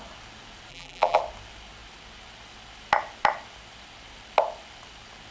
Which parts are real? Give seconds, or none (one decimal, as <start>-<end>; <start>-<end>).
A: 0.0-0.7; 1.2-5.3